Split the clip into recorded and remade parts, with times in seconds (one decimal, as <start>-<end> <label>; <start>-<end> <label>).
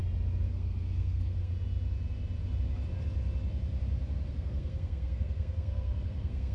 0.0-0.5 recorded; 0.5-1.5 remade; 1.5-4.3 recorded; 4.3-6.5 remade